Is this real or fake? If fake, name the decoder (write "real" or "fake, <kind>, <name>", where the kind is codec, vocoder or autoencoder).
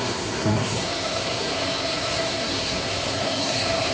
fake, codec, SNAC